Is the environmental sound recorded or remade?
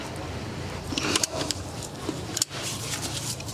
remade